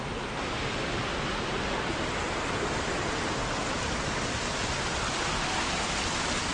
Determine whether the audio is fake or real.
real